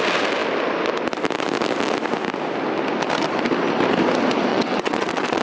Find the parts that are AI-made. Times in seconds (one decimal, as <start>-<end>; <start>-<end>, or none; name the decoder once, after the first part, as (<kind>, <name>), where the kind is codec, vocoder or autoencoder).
4.5-5.4 (vocoder, WaveNeXt)